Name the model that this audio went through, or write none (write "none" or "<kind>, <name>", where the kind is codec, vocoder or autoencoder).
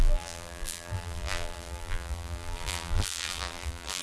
vocoder, BigVGAN v2